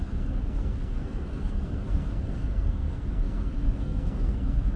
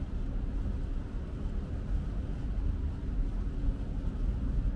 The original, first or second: second